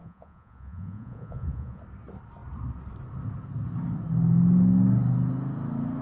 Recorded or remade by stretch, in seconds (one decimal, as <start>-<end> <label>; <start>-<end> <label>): 0.0-1.8 remade; 1.8-6.0 recorded